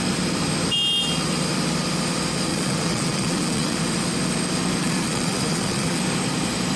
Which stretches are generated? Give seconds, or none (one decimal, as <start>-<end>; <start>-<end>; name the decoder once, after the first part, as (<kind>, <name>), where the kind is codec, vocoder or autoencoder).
2.5-3.8 (vocoder, Vocos); 4.8-6.0